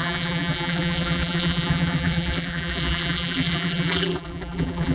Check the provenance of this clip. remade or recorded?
remade